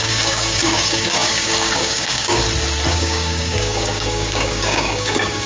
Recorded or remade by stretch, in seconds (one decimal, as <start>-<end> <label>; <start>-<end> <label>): 0.0-2.4 remade; 2.4-2.9 recorded; 2.9-5.5 remade